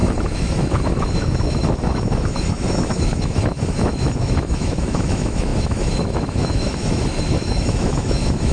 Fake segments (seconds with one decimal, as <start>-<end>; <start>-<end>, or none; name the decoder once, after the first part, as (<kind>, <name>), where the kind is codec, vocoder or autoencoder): 0.0-8.5 (autoencoder, DAC-VAE)